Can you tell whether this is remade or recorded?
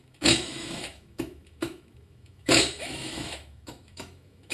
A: remade